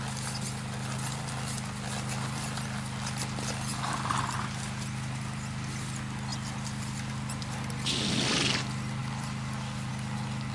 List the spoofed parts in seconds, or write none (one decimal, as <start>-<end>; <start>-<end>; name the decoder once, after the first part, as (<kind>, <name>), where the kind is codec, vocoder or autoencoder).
none